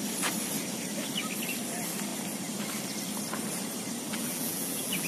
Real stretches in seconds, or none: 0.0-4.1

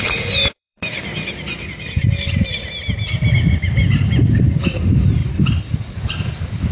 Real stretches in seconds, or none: 1.1-4.4; 5.2-5.9

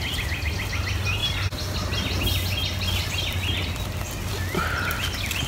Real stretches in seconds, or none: 0.0-5.5

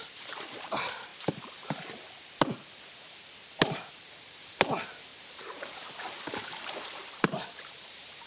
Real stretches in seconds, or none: 1.1-3.9